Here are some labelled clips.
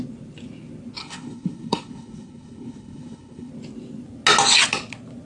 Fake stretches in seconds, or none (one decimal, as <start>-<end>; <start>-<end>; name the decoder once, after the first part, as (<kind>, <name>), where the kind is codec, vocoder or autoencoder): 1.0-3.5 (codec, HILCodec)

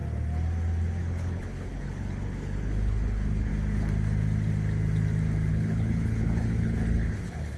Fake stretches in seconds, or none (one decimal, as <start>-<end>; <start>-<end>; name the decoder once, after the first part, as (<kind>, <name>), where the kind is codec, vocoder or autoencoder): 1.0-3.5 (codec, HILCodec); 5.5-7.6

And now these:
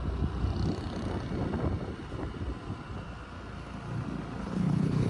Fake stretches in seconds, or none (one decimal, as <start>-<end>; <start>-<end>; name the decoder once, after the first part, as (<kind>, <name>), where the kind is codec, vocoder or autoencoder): 4.4-5.1 (codec, HILCodec)

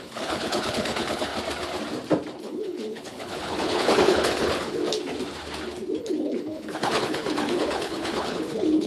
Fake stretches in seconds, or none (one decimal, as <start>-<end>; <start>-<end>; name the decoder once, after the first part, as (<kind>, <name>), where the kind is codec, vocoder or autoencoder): 0.0-1.3 (codec, HILCodec); 2.4-4.8; 6.0-8.9

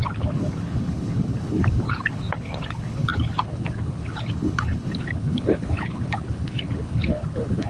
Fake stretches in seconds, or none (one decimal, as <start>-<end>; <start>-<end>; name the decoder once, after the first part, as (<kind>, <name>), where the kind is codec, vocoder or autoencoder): 0.0-7.7 (codec, HILCodec)

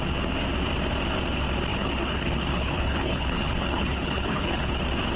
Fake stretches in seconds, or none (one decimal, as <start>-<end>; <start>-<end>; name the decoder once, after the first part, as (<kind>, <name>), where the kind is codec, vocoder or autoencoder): 1.7-4.8 (codec, HILCodec)